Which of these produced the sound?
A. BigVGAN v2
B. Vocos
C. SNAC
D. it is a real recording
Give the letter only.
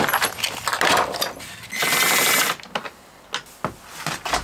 D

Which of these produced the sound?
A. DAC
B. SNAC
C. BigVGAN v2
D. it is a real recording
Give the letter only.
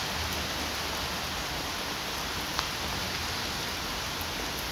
D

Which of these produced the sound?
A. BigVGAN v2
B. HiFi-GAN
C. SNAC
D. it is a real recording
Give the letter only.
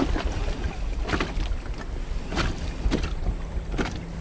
D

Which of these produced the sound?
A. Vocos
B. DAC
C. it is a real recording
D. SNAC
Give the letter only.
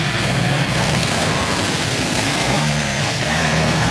D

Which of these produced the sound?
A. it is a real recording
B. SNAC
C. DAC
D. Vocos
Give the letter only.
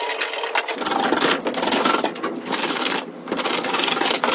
A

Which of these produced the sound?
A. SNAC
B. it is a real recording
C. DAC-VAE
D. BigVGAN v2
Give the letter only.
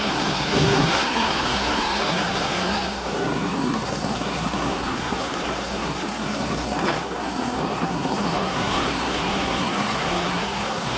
A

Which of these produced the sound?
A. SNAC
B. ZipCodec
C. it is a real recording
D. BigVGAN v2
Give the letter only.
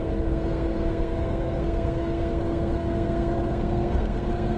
A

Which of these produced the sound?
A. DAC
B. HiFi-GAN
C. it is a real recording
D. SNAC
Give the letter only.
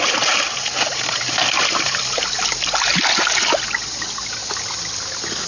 C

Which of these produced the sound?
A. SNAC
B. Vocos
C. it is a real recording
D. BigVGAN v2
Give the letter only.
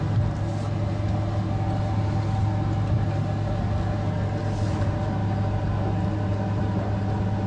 C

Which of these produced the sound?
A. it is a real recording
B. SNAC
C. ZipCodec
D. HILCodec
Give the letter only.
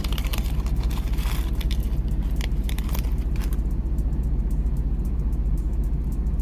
A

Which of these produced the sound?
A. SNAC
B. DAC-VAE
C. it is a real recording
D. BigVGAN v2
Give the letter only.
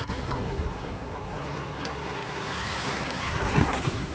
A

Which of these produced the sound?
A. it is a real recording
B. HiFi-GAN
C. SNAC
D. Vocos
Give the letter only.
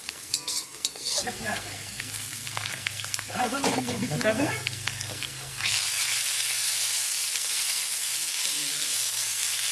C